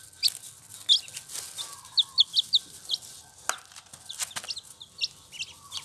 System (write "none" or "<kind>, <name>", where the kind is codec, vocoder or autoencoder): none